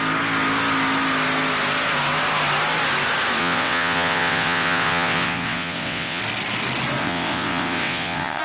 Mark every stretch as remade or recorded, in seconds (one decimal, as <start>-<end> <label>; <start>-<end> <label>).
0.0-3.4 recorded; 3.4-6.2 remade; 6.2-7.0 recorded; 7.0-8.4 remade